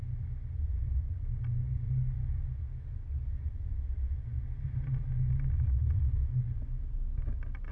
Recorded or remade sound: recorded